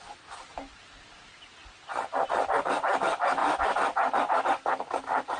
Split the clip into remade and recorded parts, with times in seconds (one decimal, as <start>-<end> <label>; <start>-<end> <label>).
0.0-5.4 recorded